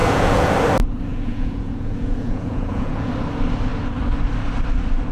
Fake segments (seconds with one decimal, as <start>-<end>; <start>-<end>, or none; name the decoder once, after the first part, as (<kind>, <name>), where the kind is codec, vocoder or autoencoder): 0.0-0.5 (vocoder, Vocos); 1.1-3.1